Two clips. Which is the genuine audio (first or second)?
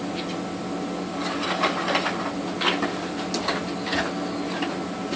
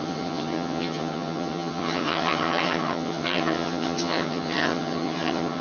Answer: first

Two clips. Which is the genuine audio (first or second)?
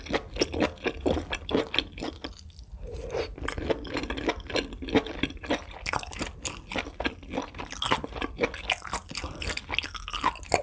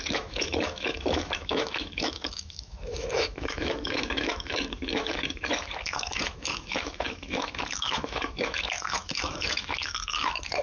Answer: first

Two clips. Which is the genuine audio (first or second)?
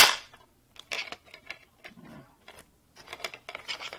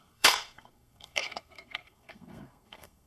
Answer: first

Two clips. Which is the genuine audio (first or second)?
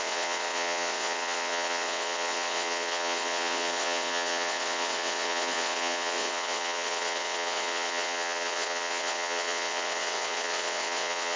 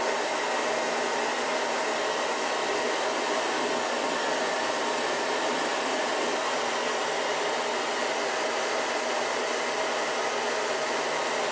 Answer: second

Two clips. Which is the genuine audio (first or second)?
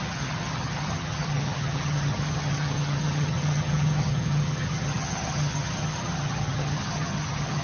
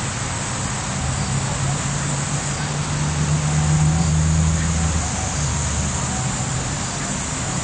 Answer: second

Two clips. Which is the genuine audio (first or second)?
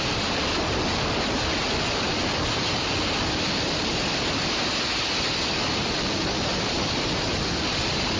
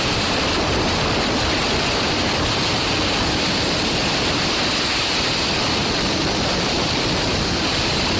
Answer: first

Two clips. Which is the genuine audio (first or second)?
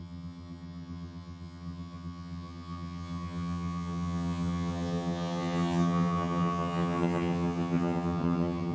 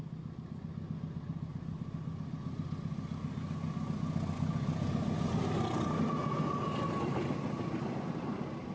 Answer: second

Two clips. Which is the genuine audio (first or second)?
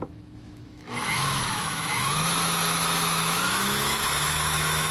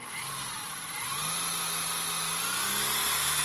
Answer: second